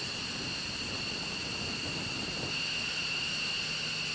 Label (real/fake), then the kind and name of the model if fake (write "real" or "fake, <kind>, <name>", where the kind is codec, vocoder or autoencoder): real